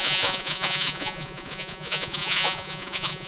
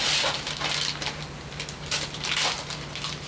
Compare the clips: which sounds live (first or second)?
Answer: second